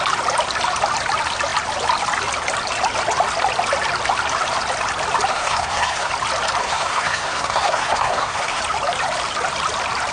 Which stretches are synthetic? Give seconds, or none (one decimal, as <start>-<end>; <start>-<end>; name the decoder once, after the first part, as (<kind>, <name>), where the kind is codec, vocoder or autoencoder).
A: 5.3-6.1 (codec, SNAC); 6.6-8.6